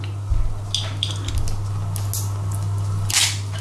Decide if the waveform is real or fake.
real